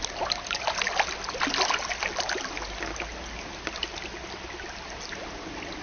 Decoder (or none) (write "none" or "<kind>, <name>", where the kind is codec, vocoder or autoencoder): none